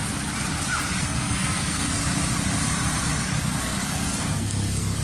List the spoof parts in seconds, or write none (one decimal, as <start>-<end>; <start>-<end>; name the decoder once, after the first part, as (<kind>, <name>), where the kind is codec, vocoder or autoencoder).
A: 1.0-2.0 (codec, SNAC); 3.6-5.0